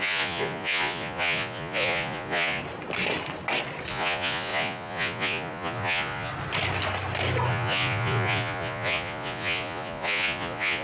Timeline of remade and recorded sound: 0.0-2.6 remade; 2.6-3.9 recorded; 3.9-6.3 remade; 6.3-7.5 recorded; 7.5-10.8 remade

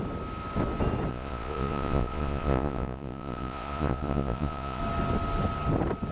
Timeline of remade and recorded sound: 0.0-1.1 recorded; 1.1-4.8 remade; 4.8-6.1 recorded

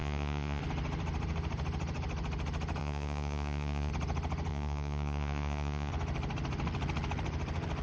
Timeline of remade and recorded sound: 0.0-0.6 remade; 0.6-2.8 recorded; 2.8-3.9 remade; 3.9-4.5 recorded; 4.5-5.9 remade; 5.9-7.8 recorded

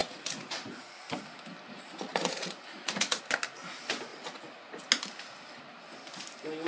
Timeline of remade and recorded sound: 0.0-1.0 remade; 1.0-2.1 recorded; 2.1-3.2 remade; 3.2-4.1 recorded; 4.1-4.8 remade; 4.8-6.7 recorded